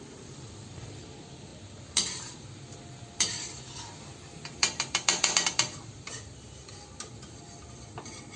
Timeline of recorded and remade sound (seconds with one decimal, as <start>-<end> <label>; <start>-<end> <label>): 0.0-8.4 remade